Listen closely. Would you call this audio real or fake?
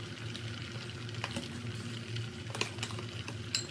real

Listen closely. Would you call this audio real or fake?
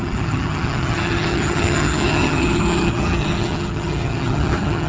fake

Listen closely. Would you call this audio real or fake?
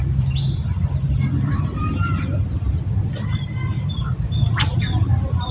fake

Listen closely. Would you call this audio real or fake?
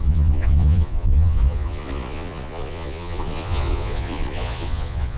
fake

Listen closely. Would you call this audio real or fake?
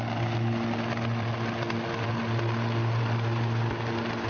real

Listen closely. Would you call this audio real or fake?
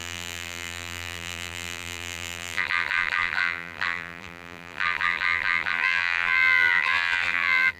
fake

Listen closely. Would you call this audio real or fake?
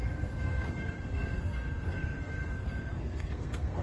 fake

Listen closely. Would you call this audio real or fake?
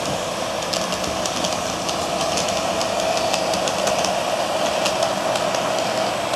real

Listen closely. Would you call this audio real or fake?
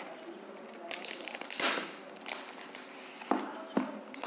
real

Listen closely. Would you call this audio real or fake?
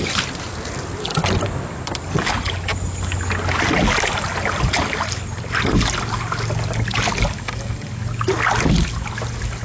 real